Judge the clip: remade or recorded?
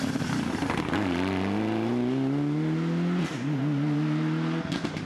recorded